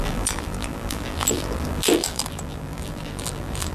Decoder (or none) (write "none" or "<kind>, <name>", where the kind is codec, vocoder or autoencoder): vocoder, BigVGAN v2